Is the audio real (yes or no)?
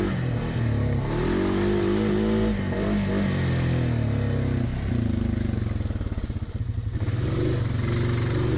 yes